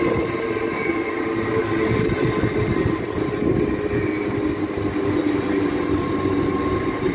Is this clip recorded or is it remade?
recorded